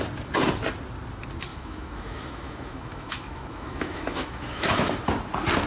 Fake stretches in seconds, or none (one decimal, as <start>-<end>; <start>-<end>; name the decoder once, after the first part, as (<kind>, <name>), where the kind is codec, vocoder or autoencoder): 1.5-4.9 (autoencoder, DAC-VAE)